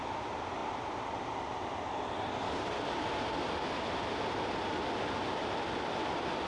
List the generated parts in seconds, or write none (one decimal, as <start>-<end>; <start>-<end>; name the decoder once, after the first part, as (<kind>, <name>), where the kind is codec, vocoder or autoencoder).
none